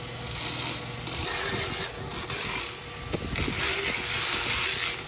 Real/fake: real